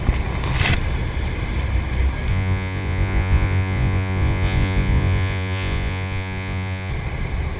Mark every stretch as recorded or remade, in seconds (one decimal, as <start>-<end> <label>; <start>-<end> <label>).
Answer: 0.0-2.3 recorded; 2.3-6.9 remade; 6.9-7.6 recorded